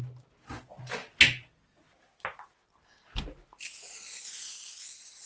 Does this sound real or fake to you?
real